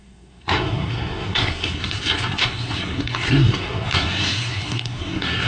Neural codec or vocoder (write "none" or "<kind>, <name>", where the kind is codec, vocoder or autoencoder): codec, SNAC